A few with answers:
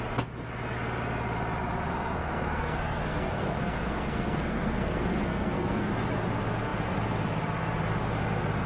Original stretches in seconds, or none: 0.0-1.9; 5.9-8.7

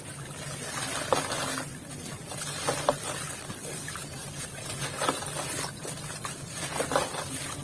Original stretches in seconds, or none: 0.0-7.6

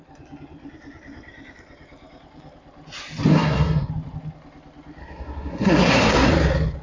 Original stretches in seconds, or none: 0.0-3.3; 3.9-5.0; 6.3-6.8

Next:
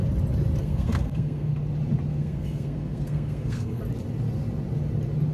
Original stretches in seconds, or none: 0.0-0.6; 1.5-2.1; 3.8-5.3

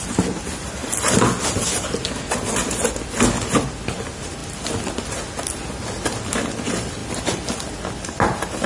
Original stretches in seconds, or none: 0.0-8.7

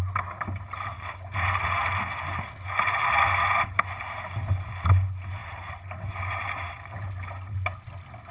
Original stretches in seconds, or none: 0.0-0.9; 1.6-5.4; 7.1-8.3

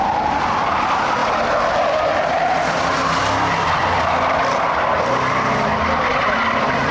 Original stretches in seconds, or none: 0.0-6.9